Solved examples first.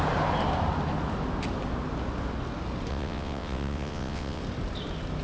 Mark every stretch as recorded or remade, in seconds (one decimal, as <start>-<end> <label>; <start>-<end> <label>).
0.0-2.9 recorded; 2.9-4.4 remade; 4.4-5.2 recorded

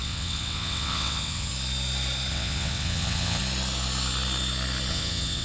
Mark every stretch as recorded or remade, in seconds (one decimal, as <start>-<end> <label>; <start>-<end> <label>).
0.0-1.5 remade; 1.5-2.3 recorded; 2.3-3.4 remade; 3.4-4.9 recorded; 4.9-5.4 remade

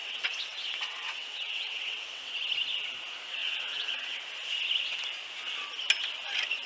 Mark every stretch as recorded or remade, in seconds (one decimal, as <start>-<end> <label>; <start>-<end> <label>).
0.0-2.3 remade; 2.3-3.4 recorded; 3.4-4.2 remade; 4.2-6.7 recorded